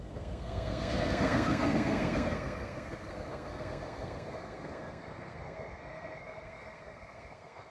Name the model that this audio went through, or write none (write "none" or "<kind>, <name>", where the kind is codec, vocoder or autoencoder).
codec, SNAC